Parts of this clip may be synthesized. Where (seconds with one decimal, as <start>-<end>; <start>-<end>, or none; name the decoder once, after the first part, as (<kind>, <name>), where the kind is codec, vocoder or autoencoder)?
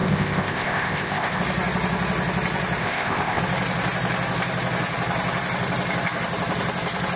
0.0-1.4 (codec, ZipCodec); 2.8-3.4